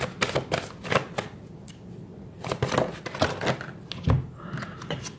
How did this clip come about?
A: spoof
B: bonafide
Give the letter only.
B